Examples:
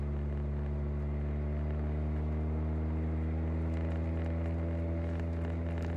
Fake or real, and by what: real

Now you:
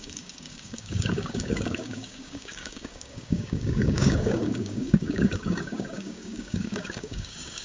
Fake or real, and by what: fake, codec, DAC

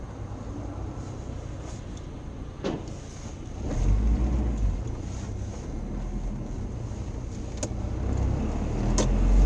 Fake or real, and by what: real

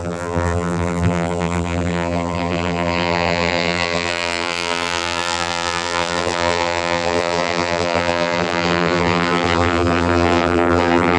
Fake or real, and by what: fake, vocoder, BigVGAN v2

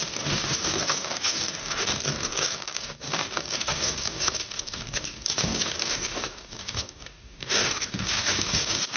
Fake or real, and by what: fake, codec, DAC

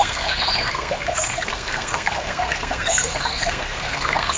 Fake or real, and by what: fake, codec, SNAC